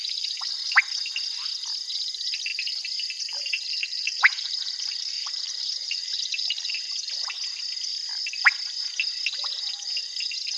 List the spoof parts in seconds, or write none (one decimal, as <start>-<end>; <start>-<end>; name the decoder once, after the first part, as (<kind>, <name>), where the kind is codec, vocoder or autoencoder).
0.0-0.6 (vocoder, BigVGAN v2); 3.8-6.7